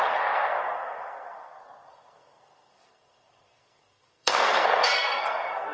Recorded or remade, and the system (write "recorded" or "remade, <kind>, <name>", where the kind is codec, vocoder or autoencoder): remade, codec, SNAC